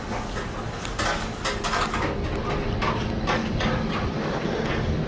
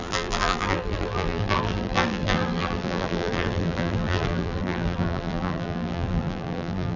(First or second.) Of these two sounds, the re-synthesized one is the second